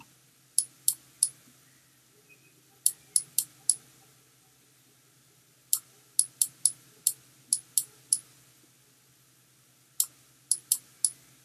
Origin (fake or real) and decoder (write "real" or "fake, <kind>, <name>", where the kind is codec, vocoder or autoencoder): real